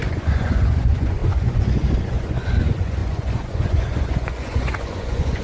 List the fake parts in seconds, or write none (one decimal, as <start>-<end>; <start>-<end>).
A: 0.0-5.4